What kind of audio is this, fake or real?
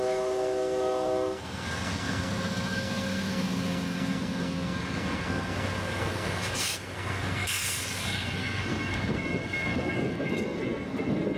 fake